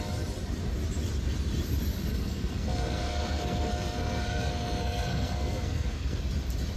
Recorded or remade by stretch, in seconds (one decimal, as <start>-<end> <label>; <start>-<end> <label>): 0.0-2.1 recorded; 2.1-6.2 remade; 6.2-6.8 recorded